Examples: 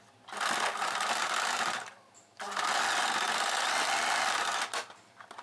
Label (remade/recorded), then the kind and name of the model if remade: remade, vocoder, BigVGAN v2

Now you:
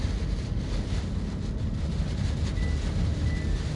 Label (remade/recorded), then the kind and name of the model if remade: recorded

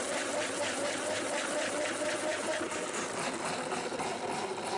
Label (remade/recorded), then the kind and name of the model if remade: recorded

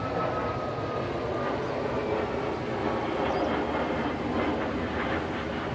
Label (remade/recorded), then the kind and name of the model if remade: recorded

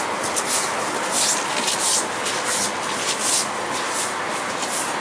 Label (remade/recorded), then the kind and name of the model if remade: recorded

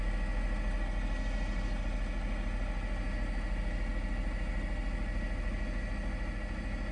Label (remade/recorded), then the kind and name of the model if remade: recorded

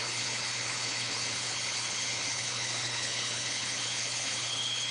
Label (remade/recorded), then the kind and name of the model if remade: remade, codec, HILCodec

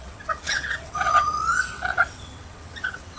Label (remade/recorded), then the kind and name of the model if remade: remade, vocoder, WaveNeXt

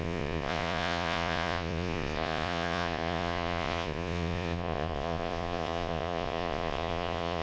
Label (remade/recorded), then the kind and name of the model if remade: remade, vocoder, Vocos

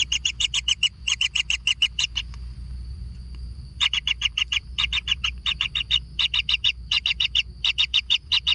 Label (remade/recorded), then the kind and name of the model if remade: remade, vocoder, Vocos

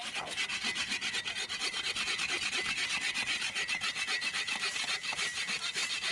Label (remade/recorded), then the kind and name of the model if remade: recorded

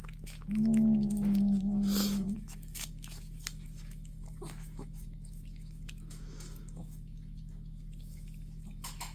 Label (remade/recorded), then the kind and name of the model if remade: remade, autoencoder, DAC-VAE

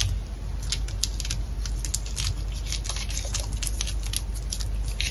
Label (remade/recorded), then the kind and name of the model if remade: recorded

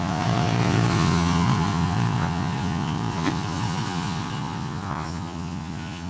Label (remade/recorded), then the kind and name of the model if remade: remade, vocoder, Vocos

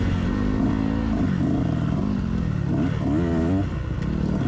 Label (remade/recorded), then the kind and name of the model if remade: recorded